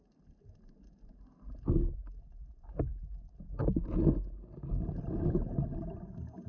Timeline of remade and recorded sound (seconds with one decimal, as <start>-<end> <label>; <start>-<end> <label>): 0.0-6.5 recorded

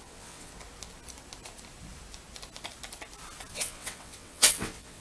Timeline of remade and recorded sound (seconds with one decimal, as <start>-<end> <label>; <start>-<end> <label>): 0.0-0.5 remade; 0.5-3.5 recorded; 3.5-5.0 remade

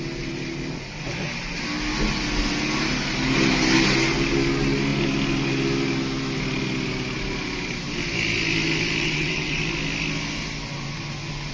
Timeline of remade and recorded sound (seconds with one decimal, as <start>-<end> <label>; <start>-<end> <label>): 0.0-9.0 recorded; 9.0-9.6 remade; 9.6-11.5 recorded

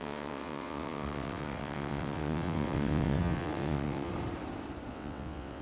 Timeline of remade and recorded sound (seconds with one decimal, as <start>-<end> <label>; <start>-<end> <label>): 0.0-4.1 remade; 4.1-4.9 recorded; 4.9-5.6 remade

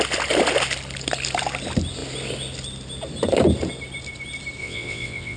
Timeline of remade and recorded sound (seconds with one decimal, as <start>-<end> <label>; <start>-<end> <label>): 0.0-4.6 recorded; 4.6-5.4 remade

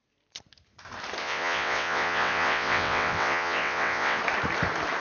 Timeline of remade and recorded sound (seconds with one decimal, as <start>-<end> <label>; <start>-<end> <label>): 0.0-1.2 recorded; 1.2-4.2 remade; 4.2-5.0 recorded

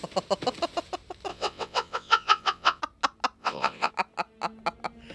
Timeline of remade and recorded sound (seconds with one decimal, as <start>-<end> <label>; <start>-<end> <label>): 0.0-1.3 recorded; 1.3-2.8 remade; 2.8-3.4 recorded; 3.4-3.9 remade; 3.9-5.1 recorded